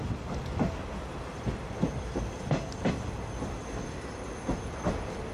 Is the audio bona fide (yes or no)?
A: yes